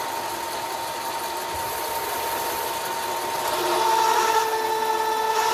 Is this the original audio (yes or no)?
yes